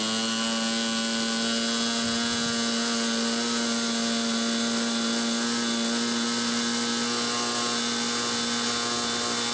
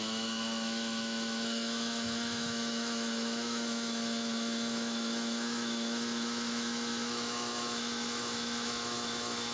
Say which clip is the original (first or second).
first